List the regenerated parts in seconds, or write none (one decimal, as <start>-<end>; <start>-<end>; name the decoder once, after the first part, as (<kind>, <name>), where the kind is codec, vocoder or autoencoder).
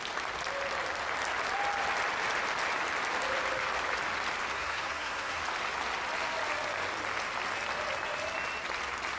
4.5-5.4 (codec, SNAC)